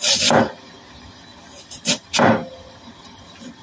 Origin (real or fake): real